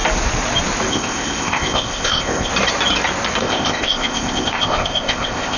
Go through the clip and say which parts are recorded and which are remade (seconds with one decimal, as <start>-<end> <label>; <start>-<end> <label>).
0.0-0.9 recorded; 0.9-2.5 remade; 2.5-3.4 recorded; 3.4-5.6 remade